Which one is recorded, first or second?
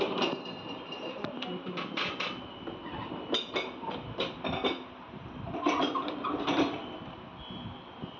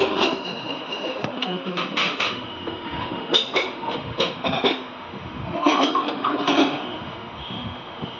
first